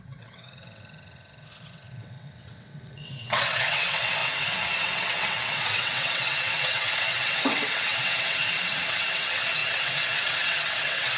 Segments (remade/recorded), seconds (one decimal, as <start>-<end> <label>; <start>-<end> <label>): 0.0-11.2 remade

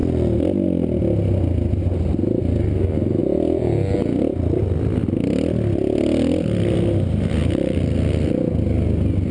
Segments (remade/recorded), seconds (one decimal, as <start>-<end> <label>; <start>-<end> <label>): 0.0-9.3 recorded

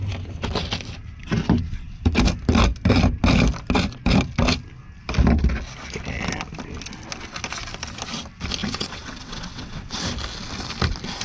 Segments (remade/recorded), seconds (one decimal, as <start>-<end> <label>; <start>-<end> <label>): 0.0-8.6 recorded; 8.6-10.1 remade; 10.1-11.2 recorded

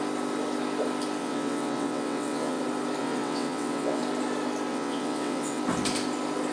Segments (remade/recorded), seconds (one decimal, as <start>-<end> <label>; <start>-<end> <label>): 0.0-1.2 recorded; 1.2-2.6 remade; 2.6-3.0 recorded; 3.0-4.0 remade; 4.0-4.7 recorded; 4.7-5.6 remade; 5.6-6.5 recorded

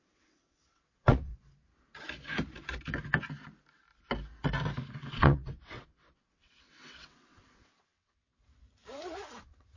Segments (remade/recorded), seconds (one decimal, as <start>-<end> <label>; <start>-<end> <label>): 0.0-1.3 remade; 1.3-4.9 recorded; 4.9-8.6 remade; 8.6-9.4 recorded; 9.4-9.8 remade